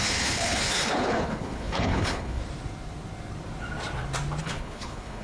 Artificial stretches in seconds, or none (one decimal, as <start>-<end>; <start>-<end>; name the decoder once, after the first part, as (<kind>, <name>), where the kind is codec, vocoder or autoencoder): 0.0-2.4 (codec, HILCodec); 4.4-5.2